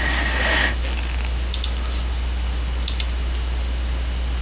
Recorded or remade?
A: recorded